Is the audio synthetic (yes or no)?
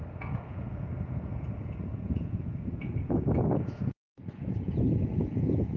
yes